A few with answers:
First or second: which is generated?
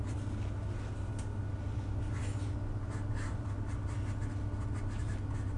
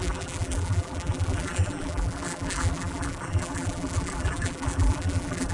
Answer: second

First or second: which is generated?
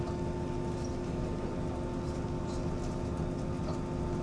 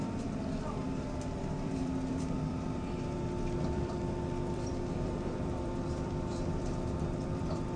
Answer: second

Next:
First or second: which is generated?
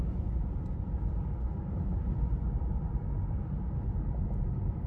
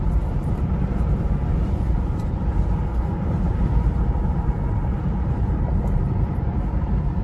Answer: second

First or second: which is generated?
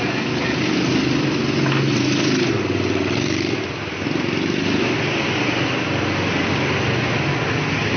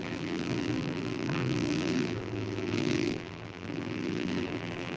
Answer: second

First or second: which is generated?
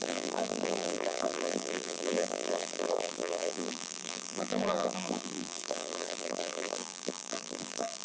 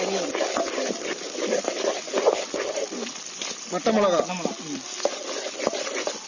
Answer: first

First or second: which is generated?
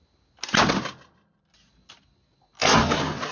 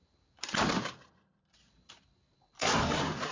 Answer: second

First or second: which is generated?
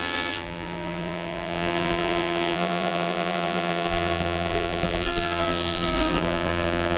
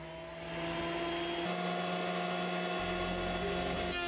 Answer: first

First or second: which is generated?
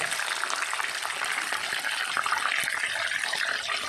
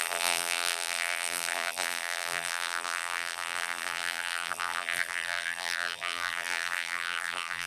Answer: second